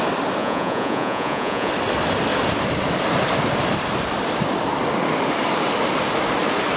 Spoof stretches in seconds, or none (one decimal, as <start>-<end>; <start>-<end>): 0.4-1.7